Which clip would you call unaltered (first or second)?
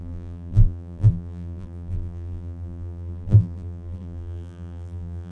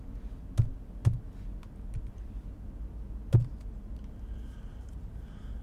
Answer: second